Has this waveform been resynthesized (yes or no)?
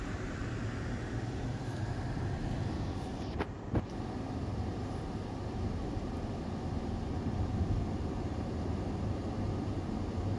yes